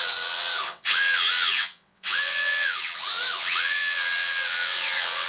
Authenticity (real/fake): fake